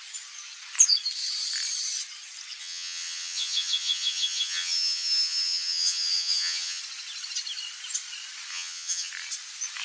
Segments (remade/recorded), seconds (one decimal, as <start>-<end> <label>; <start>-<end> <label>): 0.0-2.6 recorded; 2.6-6.8 remade; 6.8-8.5 recorded; 8.5-9.1 remade; 9.1-9.8 recorded